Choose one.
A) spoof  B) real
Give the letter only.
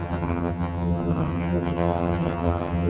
A